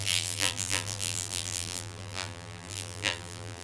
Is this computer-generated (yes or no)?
yes